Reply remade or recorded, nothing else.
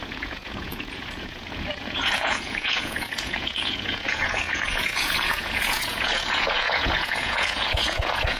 remade